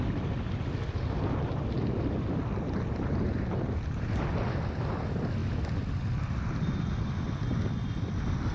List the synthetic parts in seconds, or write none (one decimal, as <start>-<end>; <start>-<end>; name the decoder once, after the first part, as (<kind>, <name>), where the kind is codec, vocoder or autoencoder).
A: none